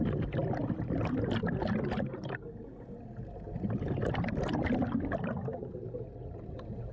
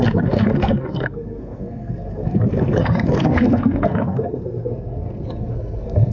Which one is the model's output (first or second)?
second